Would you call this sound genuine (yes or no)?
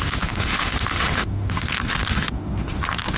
no